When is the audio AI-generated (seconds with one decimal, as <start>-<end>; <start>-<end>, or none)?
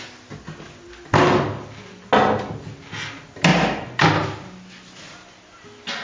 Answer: none